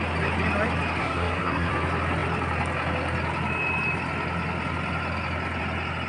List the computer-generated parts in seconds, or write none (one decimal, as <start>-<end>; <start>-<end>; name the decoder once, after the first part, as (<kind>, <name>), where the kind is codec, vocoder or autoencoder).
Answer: 1.0-1.7 (codec, SNAC)